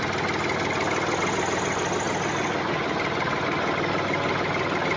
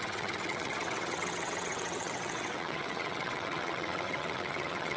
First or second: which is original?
first